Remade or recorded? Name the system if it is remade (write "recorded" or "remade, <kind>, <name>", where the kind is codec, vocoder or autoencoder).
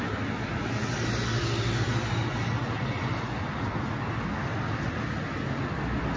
recorded